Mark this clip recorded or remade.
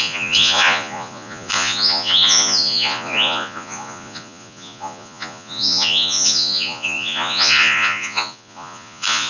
remade